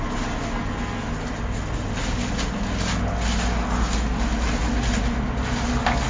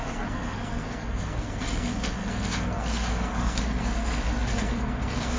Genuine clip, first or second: first